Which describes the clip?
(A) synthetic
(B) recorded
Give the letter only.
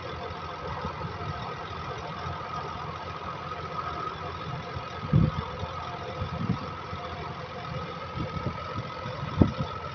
B